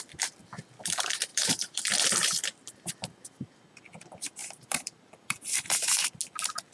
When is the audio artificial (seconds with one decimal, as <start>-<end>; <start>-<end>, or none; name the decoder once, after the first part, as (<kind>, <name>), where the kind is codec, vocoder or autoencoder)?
1.3-1.8 (vocoder, BigVGAN v2); 4.4-6.1